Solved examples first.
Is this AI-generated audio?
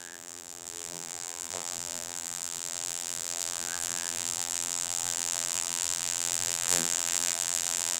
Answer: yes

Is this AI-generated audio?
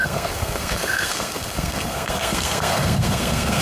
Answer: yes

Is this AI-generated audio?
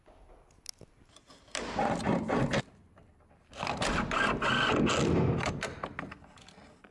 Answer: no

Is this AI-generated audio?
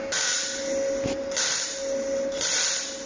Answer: no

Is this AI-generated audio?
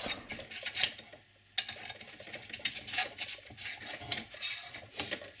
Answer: no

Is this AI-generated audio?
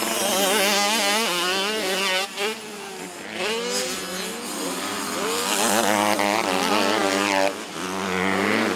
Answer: no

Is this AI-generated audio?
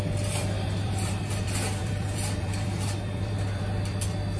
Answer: yes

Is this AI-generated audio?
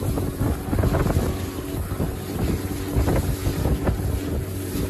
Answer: no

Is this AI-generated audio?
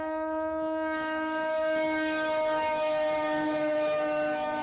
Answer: yes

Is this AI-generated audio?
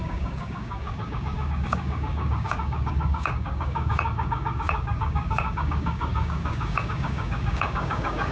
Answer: yes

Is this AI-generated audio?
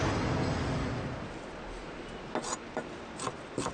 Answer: no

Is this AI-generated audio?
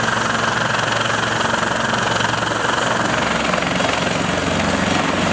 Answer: no